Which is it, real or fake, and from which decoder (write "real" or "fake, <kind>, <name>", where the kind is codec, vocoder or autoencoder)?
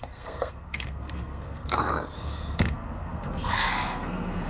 fake, codec, SNAC